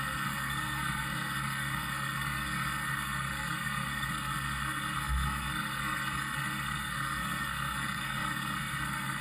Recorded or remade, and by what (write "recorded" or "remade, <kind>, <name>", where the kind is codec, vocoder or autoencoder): remade, codec, SNAC